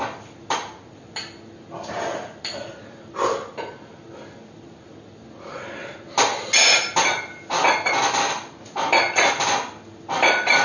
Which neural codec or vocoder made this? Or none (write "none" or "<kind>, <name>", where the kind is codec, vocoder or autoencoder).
none